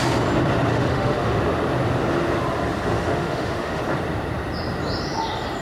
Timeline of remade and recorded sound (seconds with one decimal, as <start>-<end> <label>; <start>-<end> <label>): 0.0-0.7 recorded; 0.7-1.4 remade; 1.4-2.9 recorded; 2.9-3.8 remade; 3.8-5.6 recorded